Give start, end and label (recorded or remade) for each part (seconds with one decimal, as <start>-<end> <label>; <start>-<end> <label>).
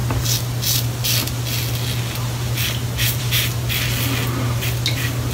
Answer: 0.0-5.3 recorded